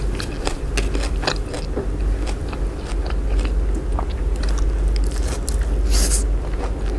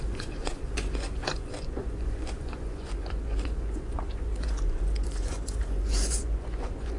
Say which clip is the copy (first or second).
second